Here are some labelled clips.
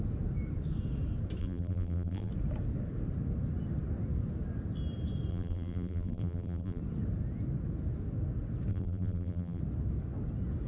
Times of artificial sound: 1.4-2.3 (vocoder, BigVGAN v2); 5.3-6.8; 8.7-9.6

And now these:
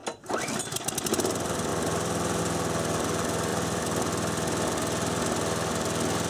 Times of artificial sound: 1.7-2.4 (vocoder, BigVGAN v2); 3.5-4.1

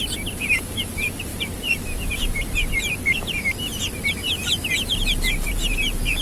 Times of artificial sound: 0.0-6.2 (vocoder, BigVGAN v2)

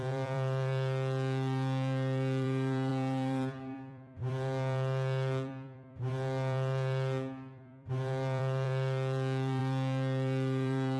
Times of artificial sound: 0.0-11.0 (vocoder, BigVGAN v2)

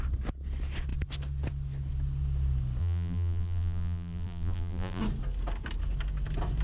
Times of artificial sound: 2.8-5.0 (vocoder, BigVGAN v2)

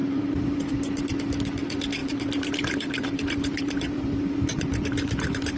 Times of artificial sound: 0.0-0.6 (vocoder, BigVGAN v2); 2.0-5.6